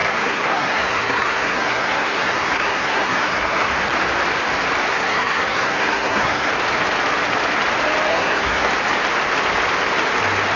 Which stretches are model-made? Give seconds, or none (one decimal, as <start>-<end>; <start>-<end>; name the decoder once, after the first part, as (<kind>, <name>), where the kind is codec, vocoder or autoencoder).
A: 0.0-3.7 (codec, SNAC); 4.9-6.5; 8.1-8.7